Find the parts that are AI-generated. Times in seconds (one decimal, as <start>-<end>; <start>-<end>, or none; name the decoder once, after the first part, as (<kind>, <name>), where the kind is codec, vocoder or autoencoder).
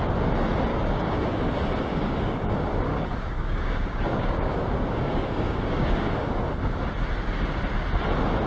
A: 0.7-1.5 (codec, DAC); 1.9-2.5; 2.9-6.2